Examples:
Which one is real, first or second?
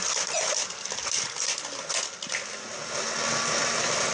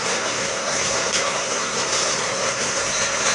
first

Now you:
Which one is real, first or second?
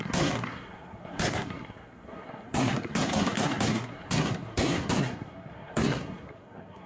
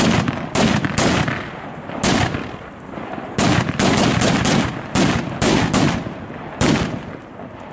second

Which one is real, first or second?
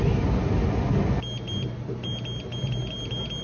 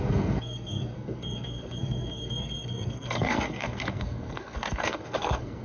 first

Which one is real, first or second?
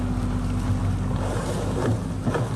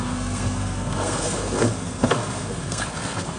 first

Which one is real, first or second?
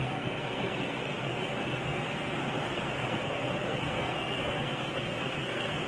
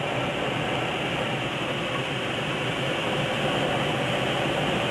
second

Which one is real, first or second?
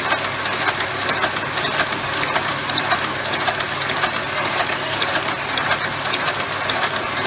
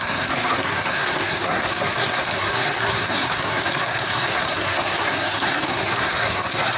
first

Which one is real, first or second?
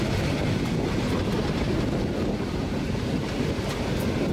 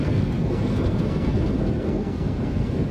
first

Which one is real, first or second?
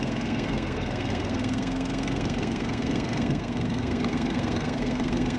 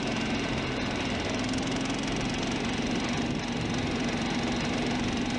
second